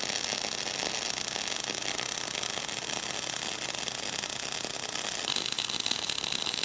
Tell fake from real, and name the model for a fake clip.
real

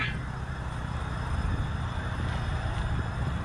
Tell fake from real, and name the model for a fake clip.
real